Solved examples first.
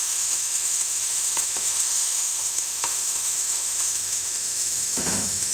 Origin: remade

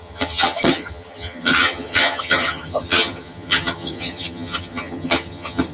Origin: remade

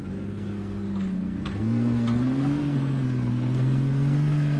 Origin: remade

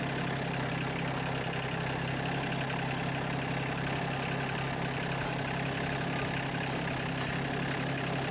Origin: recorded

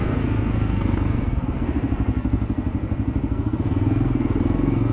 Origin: remade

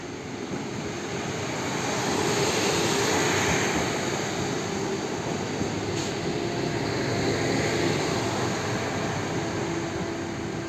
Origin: recorded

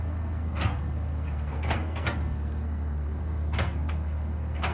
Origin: remade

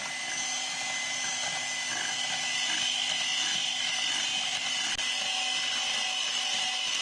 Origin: recorded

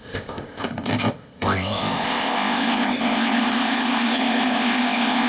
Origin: remade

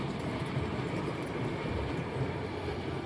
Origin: recorded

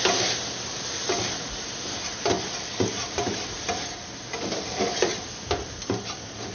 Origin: recorded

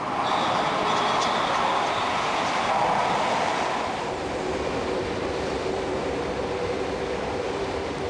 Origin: recorded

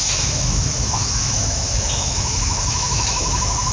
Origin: remade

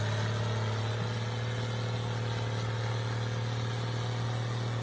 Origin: recorded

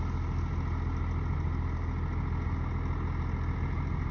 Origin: recorded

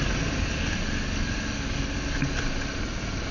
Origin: recorded